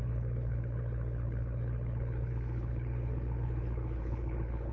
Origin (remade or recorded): remade